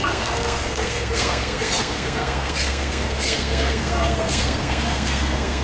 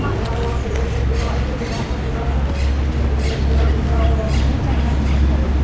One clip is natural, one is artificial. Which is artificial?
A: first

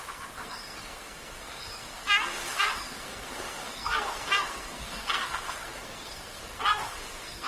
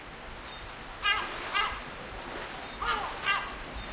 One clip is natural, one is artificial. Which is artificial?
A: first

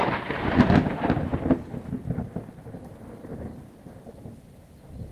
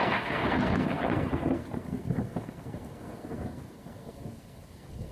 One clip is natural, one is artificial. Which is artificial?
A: second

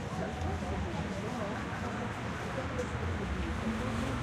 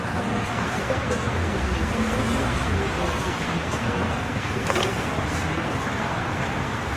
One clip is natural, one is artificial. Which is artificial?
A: second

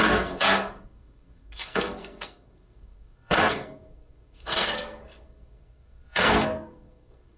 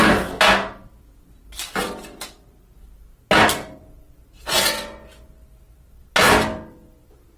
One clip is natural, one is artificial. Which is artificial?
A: first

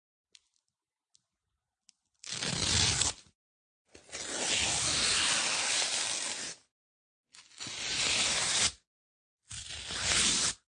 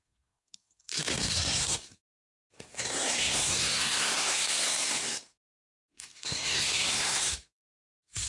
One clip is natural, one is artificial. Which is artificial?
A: second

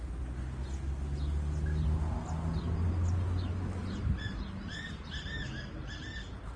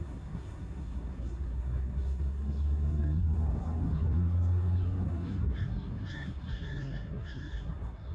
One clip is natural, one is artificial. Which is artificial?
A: second